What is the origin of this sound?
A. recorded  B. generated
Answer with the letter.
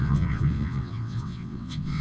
B